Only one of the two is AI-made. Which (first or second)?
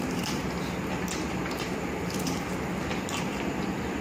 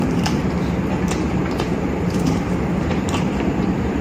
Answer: second